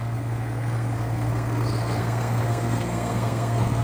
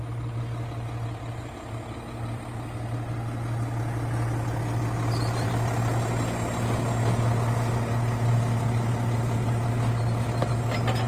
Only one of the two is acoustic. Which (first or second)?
second